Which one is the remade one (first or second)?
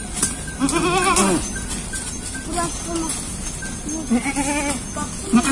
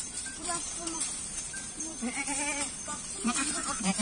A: second